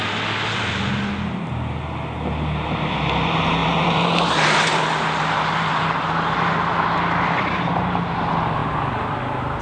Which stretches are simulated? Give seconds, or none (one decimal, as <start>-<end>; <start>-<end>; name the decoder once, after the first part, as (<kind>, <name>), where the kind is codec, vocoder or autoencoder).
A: 3.6-5.8 (vocoder, BigVGAN v2); 8.6-9.2